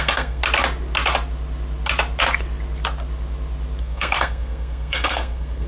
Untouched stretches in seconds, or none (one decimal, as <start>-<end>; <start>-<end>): 0.4-3.8